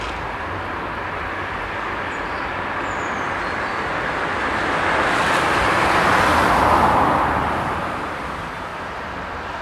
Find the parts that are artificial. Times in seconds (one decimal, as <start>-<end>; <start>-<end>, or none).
none